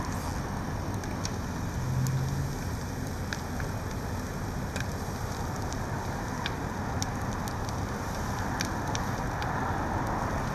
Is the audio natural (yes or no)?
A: yes